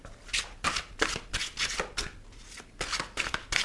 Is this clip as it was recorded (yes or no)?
yes